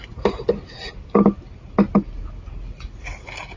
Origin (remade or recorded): recorded